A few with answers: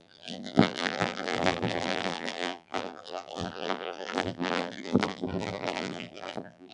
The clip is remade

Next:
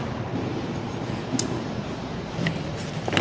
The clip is remade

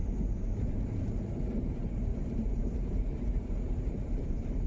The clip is remade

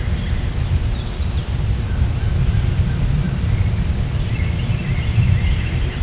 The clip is remade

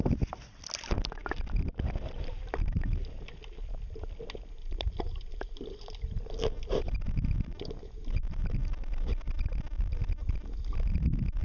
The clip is recorded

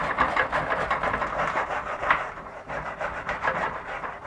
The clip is remade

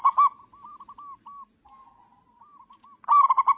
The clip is recorded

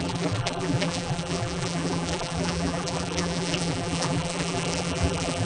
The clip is remade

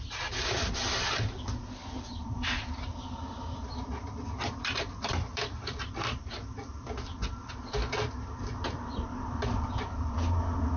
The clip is remade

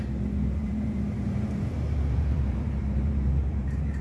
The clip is remade